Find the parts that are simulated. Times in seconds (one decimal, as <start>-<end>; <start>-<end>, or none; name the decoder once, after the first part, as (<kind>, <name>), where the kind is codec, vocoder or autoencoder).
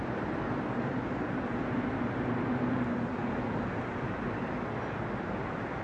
none